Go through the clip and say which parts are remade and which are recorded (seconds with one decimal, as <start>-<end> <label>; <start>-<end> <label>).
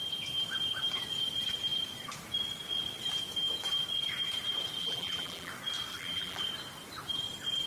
0.0-4.8 recorded; 4.8-5.5 remade; 5.5-5.9 recorded; 5.9-6.4 remade; 6.4-7.7 recorded